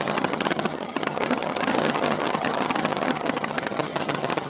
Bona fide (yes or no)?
no